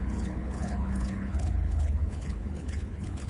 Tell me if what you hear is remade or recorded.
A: remade